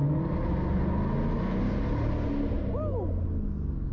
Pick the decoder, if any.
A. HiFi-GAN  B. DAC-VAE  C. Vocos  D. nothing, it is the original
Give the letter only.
D